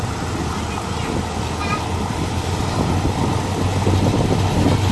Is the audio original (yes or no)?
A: yes